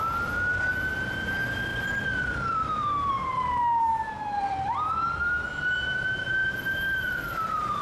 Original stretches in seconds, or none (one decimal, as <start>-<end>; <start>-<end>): 0.0-1.7; 3.1-3.9; 5.7-6.4